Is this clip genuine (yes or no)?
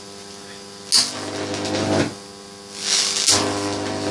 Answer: yes